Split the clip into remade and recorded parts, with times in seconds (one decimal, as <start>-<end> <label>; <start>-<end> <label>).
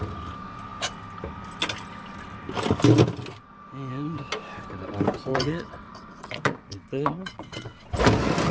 0.0-5.3 recorded; 5.3-8.0 remade; 8.0-8.5 recorded